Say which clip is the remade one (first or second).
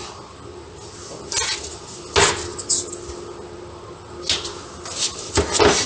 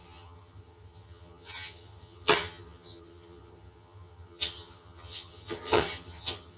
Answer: second